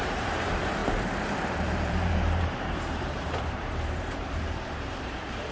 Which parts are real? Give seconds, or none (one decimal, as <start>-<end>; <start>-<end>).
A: none